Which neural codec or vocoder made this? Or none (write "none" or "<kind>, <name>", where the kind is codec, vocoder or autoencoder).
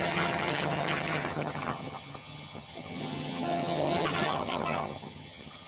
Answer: vocoder, HiFi-GAN